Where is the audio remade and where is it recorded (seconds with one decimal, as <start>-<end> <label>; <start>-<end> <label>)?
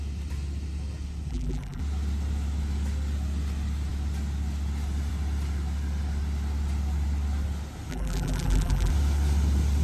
0.0-1.3 recorded; 1.3-1.8 remade; 1.8-7.9 recorded; 7.9-8.9 remade; 8.9-9.8 recorded